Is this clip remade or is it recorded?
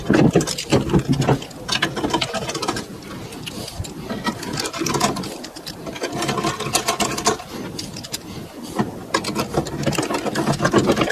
remade